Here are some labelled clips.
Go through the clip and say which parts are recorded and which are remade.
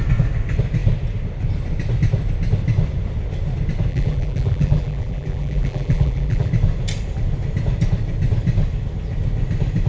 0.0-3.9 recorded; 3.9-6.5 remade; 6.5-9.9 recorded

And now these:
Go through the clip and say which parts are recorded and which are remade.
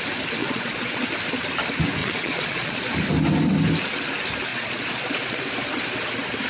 0.0-0.4 recorded; 0.4-1.0 remade; 1.0-2.0 recorded; 2.0-2.9 remade; 2.9-4.5 recorded; 4.5-5.4 remade; 5.4-6.5 recorded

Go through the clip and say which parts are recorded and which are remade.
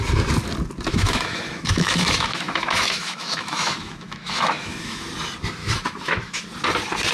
0.0-0.9 recorded; 0.9-5.0 remade; 5.0-5.6 recorded; 5.6-6.4 remade; 6.4-7.1 recorded